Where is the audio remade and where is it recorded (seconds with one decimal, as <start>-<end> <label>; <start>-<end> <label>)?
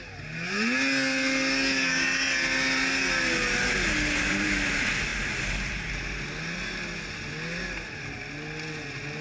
0.0-9.2 recorded